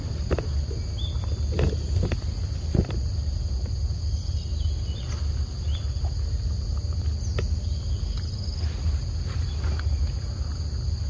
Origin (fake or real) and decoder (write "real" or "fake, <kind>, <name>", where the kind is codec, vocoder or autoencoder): real